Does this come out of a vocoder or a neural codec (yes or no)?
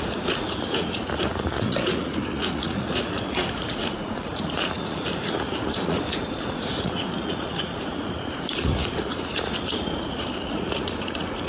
yes